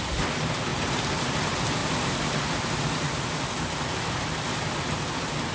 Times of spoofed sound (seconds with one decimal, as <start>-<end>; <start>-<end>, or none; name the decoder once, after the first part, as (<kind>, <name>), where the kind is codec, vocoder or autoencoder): 0.7-1.3 (vocoder, BigVGAN v2); 1.8-3.6